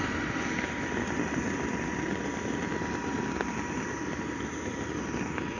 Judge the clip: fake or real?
real